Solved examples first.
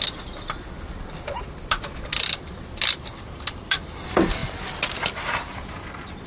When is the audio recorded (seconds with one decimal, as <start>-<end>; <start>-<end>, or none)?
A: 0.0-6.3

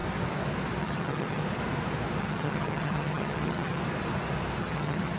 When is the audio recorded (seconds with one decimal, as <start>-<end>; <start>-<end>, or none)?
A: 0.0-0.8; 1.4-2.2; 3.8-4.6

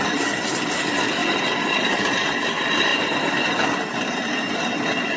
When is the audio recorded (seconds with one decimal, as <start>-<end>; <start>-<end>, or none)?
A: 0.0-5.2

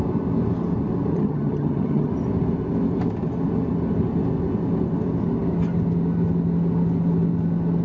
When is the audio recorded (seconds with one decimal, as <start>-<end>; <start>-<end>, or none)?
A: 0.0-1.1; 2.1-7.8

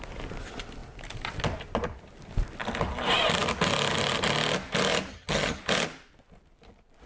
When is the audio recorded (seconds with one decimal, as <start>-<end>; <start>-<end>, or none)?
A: 0.0-5.1; 5.6-7.1